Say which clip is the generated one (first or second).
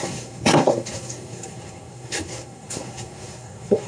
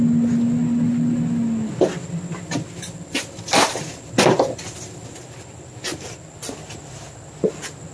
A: first